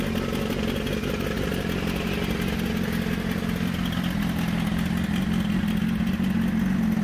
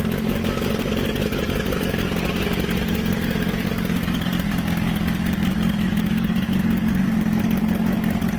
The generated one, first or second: second